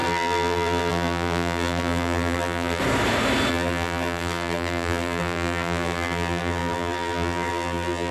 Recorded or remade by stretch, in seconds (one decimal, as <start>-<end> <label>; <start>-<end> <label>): 0.0-2.8 remade; 2.8-3.5 recorded; 3.5-8.1 remade